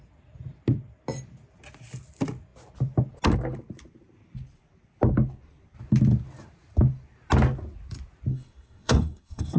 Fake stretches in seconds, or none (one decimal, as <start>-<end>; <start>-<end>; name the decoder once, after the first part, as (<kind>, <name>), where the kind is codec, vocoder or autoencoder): 8.3-9.6 (codec, SNAC)